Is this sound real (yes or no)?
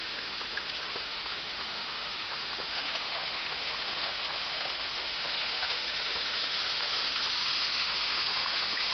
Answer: no